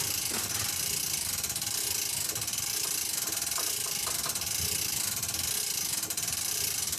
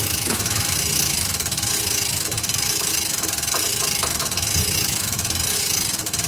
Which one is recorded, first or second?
first